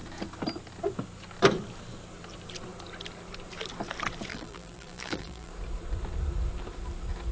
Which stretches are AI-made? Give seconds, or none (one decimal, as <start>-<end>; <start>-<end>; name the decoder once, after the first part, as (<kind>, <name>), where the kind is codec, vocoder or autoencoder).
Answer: 4.3-5.5 (vocoder, BigVGAN v2)